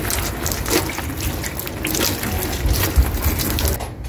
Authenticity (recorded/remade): recorded